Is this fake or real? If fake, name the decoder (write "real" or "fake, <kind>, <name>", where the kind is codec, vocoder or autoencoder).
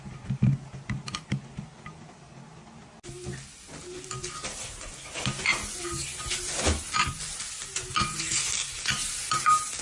real